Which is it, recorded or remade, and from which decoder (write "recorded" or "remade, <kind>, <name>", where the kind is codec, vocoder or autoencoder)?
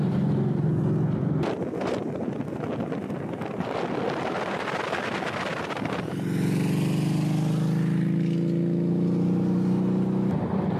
recorded